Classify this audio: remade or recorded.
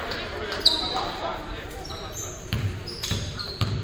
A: remade